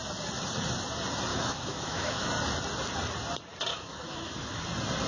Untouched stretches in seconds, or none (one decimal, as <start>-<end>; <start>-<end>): 0.0-1.3; 2.3-3.7; 4.6-5.1

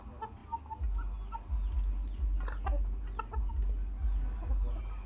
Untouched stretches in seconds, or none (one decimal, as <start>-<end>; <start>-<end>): 0.0-5.1

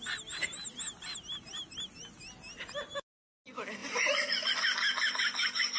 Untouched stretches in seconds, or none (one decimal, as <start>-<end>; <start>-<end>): 0.0-3.8; 4.5-5.8

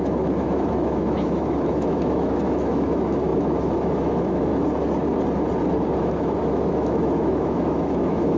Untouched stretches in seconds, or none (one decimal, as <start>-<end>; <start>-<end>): 4.5-6.0

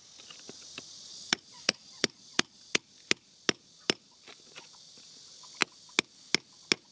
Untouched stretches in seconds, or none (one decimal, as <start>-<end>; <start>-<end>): 0.0-1.1; 2.8-6.9

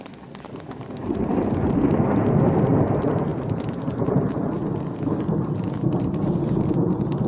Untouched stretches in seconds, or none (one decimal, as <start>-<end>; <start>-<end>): 0.0-7.3